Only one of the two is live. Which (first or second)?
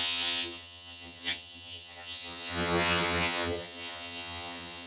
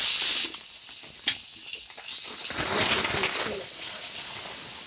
second